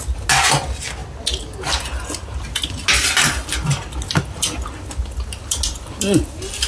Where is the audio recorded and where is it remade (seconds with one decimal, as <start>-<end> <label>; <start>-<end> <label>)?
0.0-6.7 recorded